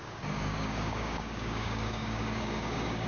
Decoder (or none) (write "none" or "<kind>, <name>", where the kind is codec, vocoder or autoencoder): codec, DAC